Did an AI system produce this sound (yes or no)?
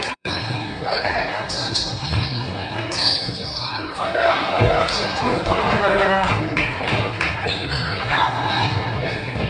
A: yes